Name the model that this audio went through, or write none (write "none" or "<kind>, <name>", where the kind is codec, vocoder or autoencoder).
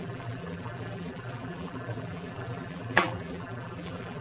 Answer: vocoder, BigVGAN v2